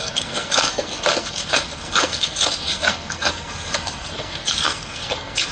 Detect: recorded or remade remade